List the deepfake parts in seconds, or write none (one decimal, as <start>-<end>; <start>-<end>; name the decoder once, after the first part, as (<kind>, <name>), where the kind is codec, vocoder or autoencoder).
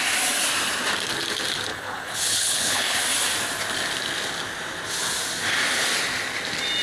1.7-3.0 (codec, HILCodec)